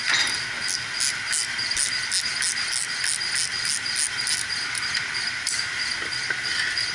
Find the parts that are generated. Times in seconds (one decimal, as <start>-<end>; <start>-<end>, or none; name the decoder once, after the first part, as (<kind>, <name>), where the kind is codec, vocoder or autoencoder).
none